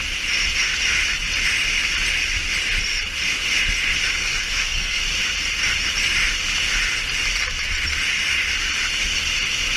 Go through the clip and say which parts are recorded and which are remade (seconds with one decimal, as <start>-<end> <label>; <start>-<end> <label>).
0.0-4.2 recorded; 4.2-5.0 remade; 5.0-9.8 recorded